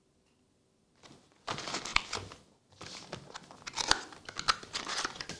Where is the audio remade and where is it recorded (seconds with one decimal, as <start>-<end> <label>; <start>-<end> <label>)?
0.0-5.4 recorded